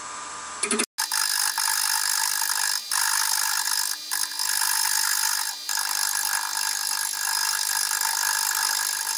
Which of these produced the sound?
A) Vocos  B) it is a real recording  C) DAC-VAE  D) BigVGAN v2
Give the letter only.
B